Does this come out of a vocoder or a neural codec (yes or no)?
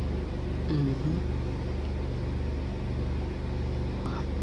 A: no